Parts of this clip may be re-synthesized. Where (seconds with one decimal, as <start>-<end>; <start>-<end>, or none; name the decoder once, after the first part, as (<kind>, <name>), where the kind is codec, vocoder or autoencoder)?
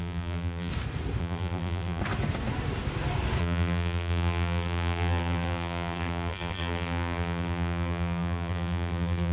0.0-0.7 (vocoder, BigVGAN v2); 1.2-2.0; 3.4-9.3